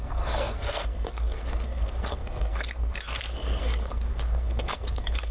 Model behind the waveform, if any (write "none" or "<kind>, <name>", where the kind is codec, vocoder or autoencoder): codec, SNAC